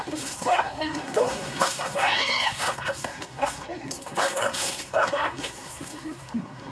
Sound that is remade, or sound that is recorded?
remade